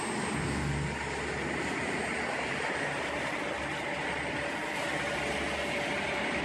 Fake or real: real